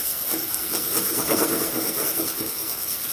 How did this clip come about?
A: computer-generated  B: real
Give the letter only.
A